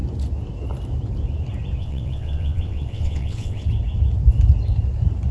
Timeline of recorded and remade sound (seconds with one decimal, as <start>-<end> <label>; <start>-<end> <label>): 0.0-1.8 recorded; 1.8-3.7 remade; 3.7-5.3 recorded